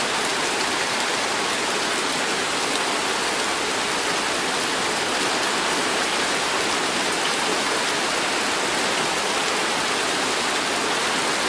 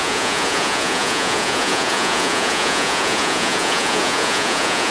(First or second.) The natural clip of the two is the first